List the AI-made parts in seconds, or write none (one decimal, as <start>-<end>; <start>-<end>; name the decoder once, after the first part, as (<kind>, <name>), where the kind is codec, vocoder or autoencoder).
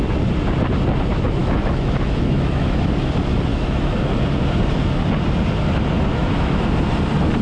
1.4-2.8 (autoencoder, DAC-VAE); 3.5-4.0; 6.1-6.6